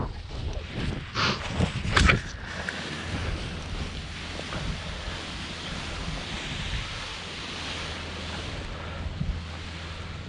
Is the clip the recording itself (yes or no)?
yes